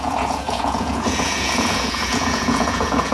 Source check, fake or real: fake